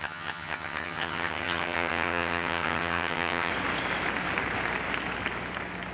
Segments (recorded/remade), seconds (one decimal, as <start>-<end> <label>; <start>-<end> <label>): 0.0-3.5 remade; 3.5-5.9 recorded